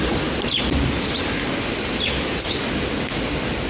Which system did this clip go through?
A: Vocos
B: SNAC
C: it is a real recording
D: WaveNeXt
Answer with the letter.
C